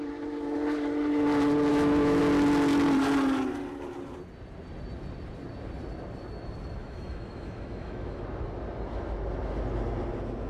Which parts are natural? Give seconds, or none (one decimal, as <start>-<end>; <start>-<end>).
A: 0.0-1.7; 2.2-6.8; 8.2-10.5